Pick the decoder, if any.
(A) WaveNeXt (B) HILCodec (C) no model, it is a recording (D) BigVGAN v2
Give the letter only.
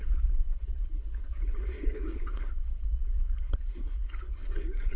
B